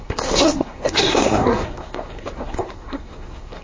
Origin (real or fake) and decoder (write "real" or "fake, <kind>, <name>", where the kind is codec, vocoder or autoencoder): fake, codec, SNAC